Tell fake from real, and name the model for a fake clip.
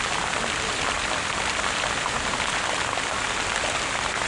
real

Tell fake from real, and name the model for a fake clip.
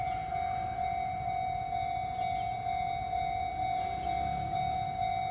fake, vocoder, BigVGAN v2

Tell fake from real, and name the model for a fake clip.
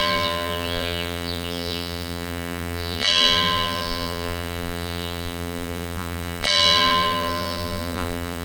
fake, vocoder, BigVGAN v2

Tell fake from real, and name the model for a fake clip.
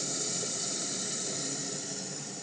fake, vocoder, BigVGAN v2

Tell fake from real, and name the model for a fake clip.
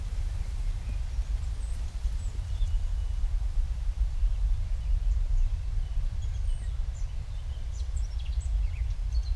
fake, vocoder, BigVGAN v2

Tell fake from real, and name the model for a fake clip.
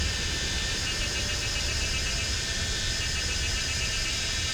fake, vocoder, BigVGAN v2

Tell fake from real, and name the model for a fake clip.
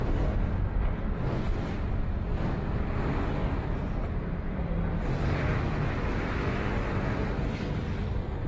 fake, vocoder, BigVGAN v2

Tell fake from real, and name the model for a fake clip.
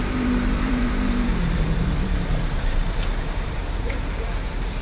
fake, vocoder, BigVGAN v2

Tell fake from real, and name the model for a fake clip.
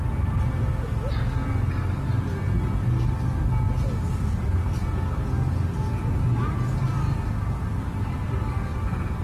real